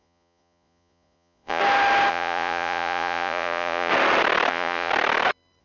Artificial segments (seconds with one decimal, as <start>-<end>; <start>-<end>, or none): 0.0-1.6; 2.1-3.9; 4.5-4.9